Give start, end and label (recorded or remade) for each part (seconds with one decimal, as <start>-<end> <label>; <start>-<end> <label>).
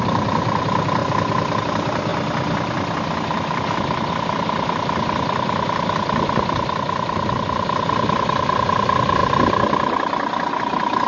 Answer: 0.0-1.0 remade; 1.0-1.6 recorded; 1.6-2.1 remade; 2.1-4.1 recorded; 4.1-9.2 remade; 9.2-11.1 recorded